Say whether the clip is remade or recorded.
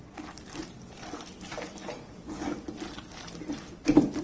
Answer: remade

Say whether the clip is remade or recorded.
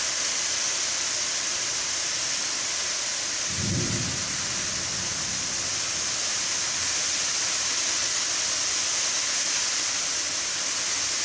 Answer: recorded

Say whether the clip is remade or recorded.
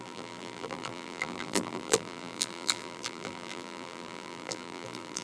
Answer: remade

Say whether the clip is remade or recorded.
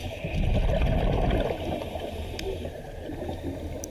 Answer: recorded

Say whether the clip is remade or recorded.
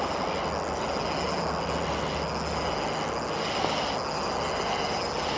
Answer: recorded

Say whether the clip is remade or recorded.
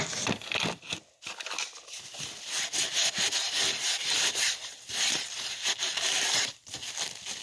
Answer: recorded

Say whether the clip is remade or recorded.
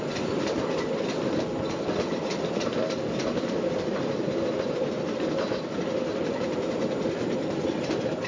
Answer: remade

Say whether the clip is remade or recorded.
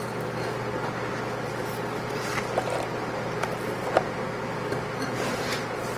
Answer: recorded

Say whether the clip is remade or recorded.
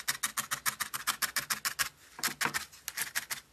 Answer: recorded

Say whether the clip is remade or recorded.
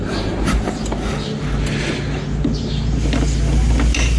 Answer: recorded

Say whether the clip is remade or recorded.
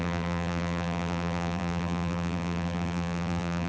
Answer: remade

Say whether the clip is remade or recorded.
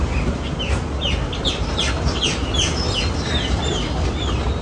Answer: remade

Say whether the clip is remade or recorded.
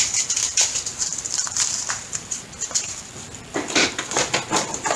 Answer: recorded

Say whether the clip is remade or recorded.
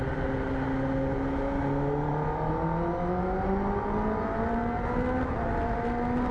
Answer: recorded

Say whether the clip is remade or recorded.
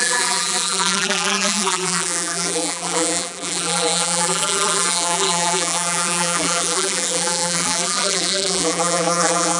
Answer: remade